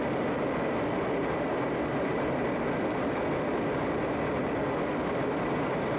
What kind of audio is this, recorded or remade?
recorded